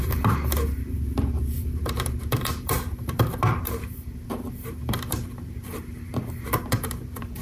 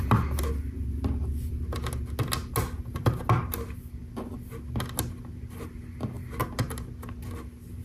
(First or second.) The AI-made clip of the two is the first